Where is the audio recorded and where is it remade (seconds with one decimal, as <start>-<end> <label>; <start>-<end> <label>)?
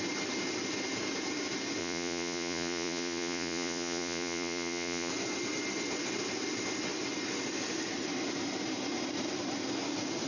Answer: 0.0-1.8 recorded; 1.8-5.1 remade; 5.1-10.3 recorded